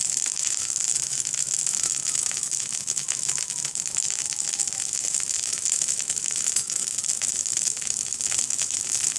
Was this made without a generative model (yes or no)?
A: no